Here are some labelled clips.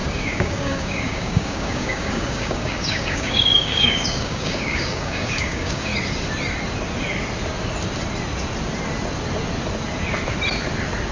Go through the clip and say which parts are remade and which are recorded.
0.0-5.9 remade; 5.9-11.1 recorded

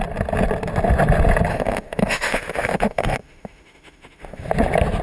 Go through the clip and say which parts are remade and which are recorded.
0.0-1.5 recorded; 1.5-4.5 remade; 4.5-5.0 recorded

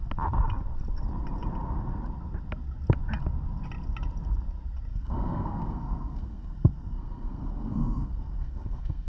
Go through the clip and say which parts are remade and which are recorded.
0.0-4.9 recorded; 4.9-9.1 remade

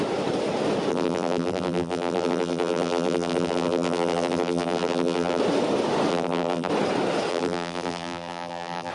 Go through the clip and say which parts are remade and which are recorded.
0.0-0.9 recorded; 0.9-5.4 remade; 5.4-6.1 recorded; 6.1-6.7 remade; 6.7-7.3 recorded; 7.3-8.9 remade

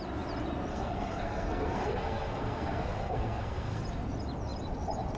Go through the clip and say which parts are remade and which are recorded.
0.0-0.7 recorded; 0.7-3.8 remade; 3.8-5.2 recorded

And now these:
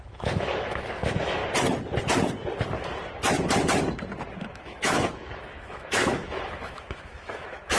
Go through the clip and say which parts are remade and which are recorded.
0.0-1.4 remade; 1.4-4.4 recorded; 4.4-7.8 remade

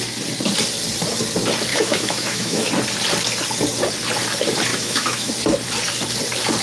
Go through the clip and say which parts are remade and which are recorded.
0.0-1.7 recorded; 1.7-2.7 remade; 2.7-4.7 recorded; 4.7-5.3 remade; 5.3-6.6 recorded

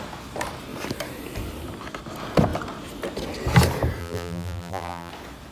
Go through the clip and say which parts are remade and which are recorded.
0.0-4.0 recorded; 4.0-5.1 remade; 5.1-5.5 recorded